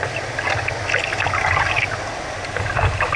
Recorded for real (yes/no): yes